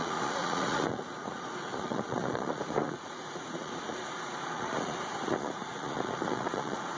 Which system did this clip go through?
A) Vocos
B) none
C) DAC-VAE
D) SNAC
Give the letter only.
A